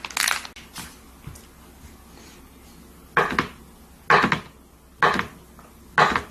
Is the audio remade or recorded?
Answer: recorded